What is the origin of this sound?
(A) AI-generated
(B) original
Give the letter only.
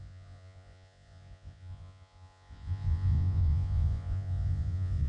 A